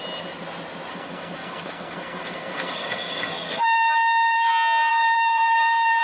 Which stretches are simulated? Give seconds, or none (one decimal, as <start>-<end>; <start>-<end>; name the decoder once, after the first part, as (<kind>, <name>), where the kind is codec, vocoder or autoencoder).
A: 0.9-4.5 (codec, SNAC); 4.9-6.0